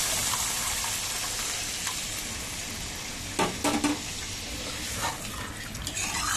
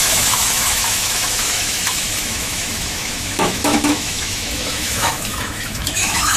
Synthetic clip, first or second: second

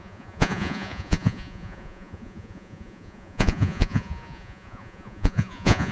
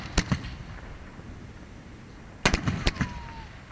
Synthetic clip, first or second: first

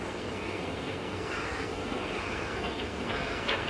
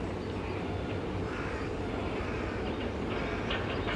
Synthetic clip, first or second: first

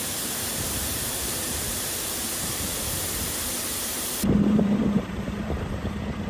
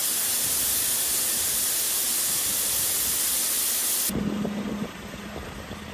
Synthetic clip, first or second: first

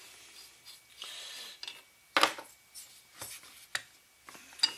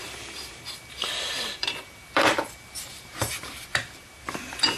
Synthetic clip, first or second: second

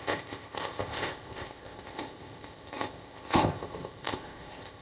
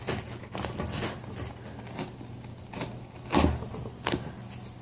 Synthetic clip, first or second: first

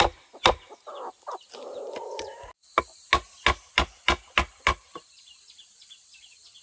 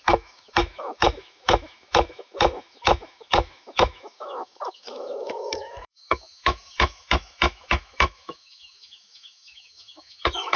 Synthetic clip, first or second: second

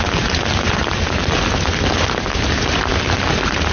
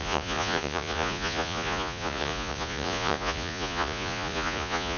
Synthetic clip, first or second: second